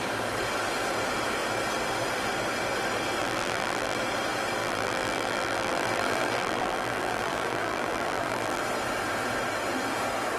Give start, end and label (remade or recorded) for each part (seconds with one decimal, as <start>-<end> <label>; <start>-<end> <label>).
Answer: 0.0-3.2 recorded; 3.2-4.0 remade; 4.0-4.6 recorded; 4.6-8.6 remade; 8.6-10.4 recorded